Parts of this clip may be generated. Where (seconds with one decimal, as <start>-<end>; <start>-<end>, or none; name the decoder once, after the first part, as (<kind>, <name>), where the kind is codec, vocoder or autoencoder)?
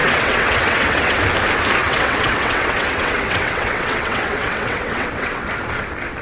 0.0-1.2 (vocoder, WaveNeXt); 1.8-5.5